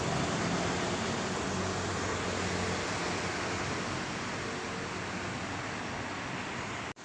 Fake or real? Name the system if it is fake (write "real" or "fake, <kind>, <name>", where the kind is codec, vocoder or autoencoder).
real